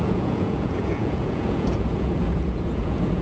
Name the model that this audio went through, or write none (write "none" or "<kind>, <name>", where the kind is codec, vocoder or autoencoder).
vocoder, Vocos